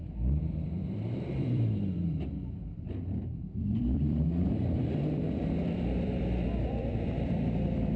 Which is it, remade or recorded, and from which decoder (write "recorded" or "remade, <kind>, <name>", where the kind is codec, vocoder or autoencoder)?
remade, vocoder, BigVGAN v2